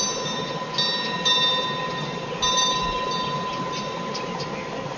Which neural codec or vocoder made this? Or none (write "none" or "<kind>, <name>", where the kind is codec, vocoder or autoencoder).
none